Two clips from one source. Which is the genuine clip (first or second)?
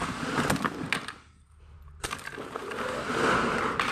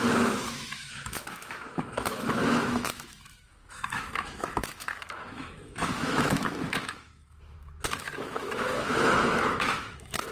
first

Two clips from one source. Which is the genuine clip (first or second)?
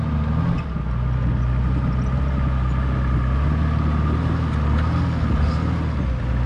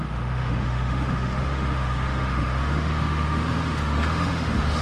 first